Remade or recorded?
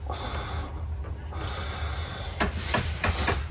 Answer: recorded